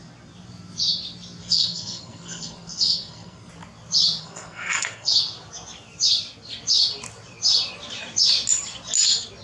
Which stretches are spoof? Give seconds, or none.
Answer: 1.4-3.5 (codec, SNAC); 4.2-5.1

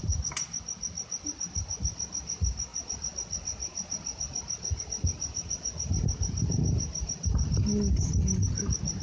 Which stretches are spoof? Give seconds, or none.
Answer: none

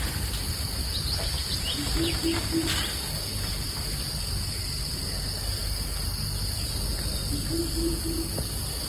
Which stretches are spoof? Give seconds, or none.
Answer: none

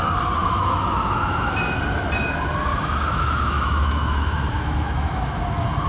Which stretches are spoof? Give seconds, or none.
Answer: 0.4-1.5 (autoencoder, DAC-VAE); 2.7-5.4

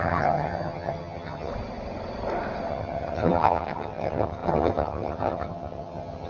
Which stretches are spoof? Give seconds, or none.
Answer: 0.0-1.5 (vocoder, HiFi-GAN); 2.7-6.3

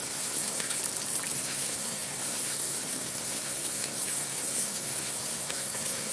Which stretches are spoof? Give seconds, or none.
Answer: 0.0-0.8 (codec, SNAC); 1.3-6.1